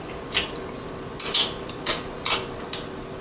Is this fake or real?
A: real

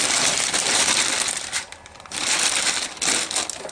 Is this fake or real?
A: real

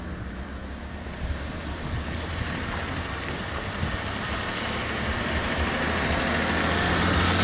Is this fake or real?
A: real